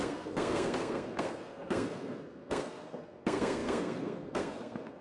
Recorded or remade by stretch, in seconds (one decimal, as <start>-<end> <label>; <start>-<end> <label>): 0.0-5.0 remade